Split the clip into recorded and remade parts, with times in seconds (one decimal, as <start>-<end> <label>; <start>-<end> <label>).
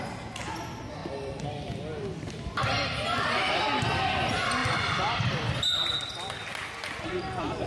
0.0-1.0 recorded; 1.0-3.5 remade; 3.5-4.6 recorded; 4.6-6.4 remade; 6.4-7.7 recorded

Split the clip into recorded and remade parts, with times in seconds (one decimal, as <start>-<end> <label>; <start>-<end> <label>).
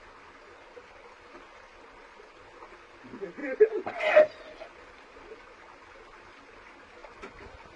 0.0-3.4 recorded; 3.4-5.3 remade; 5.3-7.0 recorded; 7.0-7.8 remade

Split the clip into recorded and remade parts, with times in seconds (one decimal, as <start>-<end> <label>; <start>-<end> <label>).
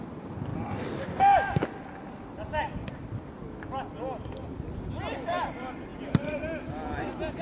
0.0-0.5 remade; 0.5-4.9 recorded; 4.9-7.4 remade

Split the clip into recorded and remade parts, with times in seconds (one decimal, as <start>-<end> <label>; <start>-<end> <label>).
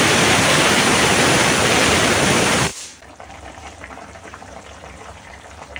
0.0-1.4 remade; 1.4-2.1 recorded; 2.1-5.8 remade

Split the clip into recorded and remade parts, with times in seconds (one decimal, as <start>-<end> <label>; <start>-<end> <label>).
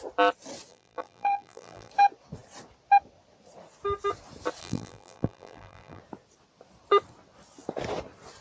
0.0-0.7 recorded; 0.7-1.9 remade; 1.9-4.6 recorded; 4.6-6.0 remade; 6.0-8.4 recorded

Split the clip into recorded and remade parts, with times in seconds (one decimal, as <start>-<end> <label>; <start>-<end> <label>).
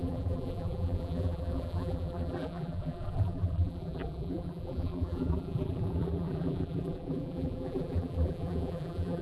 0.0-9.2 remade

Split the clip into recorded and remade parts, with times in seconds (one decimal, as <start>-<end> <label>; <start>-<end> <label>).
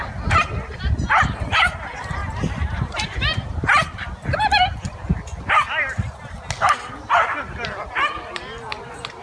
0.0-2.2 recorded; 2.2-4.1 remade; 4.1-9.2 recorded